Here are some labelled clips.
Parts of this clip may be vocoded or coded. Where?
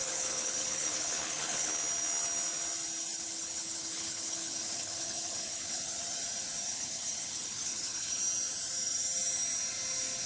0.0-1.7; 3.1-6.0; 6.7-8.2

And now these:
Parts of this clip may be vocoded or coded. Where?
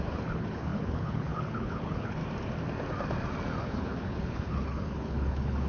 0.0-2.2; 3.6-5.7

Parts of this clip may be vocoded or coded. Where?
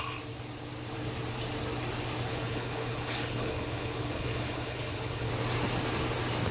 2.3-5.3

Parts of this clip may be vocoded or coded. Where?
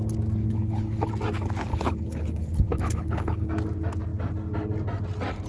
0.4-1.1; 1.7-3.5